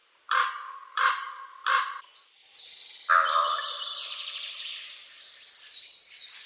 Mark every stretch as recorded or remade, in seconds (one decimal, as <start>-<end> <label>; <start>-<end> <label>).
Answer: 0.0-6.5 recorded